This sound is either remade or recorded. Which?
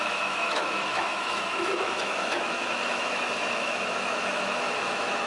remade